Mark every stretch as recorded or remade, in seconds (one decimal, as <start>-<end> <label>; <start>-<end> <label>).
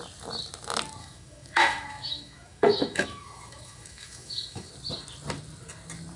0.0-1.0 recorded; 1.0-4.7 remade; 4.7-6.2 recorded